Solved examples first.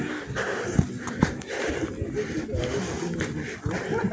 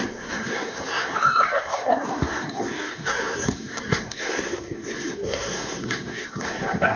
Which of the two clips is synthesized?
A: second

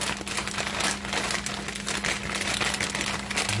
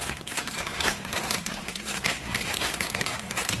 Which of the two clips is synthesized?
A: second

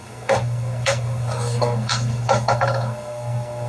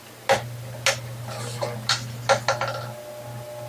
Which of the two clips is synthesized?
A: first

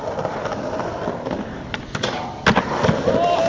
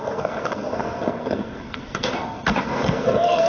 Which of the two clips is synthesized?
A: second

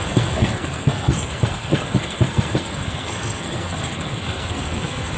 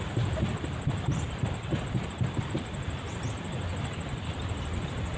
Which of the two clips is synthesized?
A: first